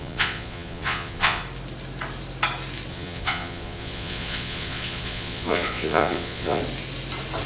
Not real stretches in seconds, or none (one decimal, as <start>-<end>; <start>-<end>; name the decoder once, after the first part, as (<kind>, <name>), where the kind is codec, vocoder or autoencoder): 0.0-1.4 (vocoder, Vocos); 2.9-6.6